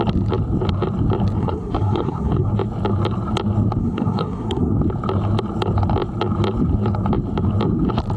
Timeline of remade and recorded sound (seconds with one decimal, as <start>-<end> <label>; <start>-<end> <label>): 0.0-1.4 recorded; 1.4-2.5 remade; 2.5-3.8 recorded; 3.8-4.7 remade; 4.7-8.2 recorded